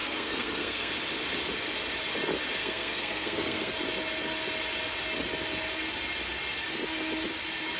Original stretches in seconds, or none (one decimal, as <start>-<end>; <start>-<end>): 0.9-2.6; 3.7-7.8